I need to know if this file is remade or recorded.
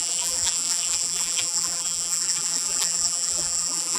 remade